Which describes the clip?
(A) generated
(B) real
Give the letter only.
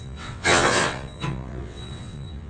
A